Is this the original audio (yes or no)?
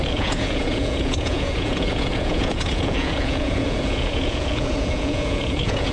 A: no